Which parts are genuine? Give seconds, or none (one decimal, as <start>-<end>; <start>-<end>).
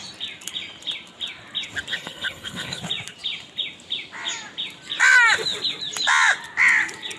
0.0-1.9; 2.8-7.2